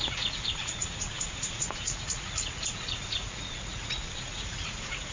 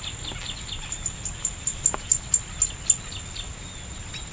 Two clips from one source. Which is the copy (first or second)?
first